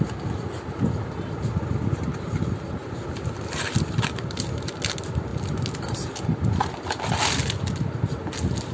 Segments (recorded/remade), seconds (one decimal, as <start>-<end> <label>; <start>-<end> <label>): 0.0-8.7 recorded